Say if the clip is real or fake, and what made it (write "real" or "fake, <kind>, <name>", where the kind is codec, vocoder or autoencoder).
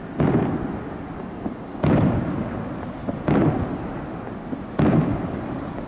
real